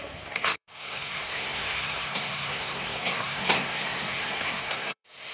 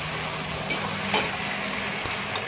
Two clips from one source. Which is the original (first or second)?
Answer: second